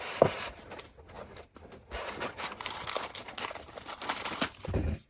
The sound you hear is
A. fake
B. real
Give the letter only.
B